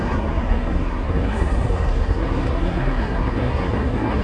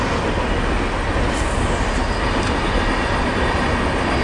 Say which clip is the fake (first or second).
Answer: first